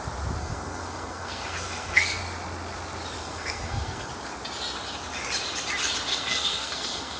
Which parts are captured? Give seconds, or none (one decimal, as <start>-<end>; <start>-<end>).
0.0-0.4; 2.2-3.2; 4.1-6.1